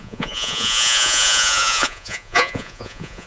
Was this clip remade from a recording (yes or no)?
yes